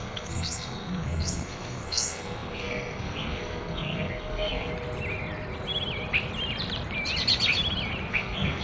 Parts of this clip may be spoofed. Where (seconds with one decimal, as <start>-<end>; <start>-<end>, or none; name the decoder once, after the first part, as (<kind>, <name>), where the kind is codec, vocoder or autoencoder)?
0.0-4.7 (codec, SNAC); 8.1-8.6